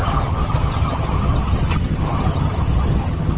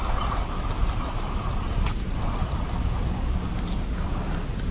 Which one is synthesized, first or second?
first